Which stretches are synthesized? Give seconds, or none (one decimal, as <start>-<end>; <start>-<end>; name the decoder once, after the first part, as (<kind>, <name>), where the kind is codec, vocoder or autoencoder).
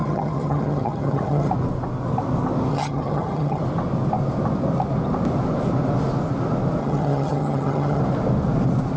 0.0-1.5 (vocoder, HiFi-GAN); 2.7-3.6; 6.8-8.0